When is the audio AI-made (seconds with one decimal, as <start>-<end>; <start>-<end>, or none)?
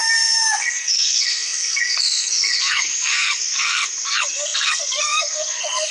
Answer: 0.0-5.9